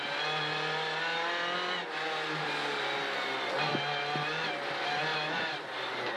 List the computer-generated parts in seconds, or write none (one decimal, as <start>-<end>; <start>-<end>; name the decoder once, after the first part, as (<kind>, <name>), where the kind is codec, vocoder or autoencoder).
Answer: 5.1-6.2 (vocoder, BigVGAN v2)